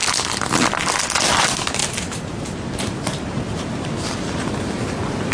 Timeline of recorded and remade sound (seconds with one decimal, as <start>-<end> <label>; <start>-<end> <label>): 0.0-5.3 recorded